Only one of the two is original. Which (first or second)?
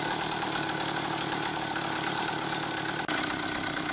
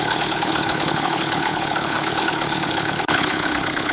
first